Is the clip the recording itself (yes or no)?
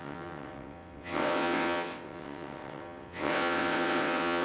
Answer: no